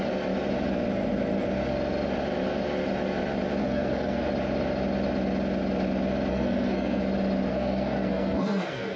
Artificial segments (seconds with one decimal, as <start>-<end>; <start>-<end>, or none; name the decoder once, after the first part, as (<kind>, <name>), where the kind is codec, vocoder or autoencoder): 3.6-4.3 (codec, SNAC); 6.3-7.0; 7.5-9.0